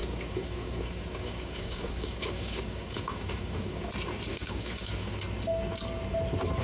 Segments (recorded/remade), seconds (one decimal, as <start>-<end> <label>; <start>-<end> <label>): 0.0-3.9 remade; 3.9-4.3 recorded; 4.3-5.2 remade; 5.2-6.6 recorded